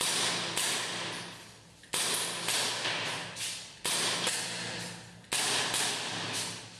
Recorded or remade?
recorded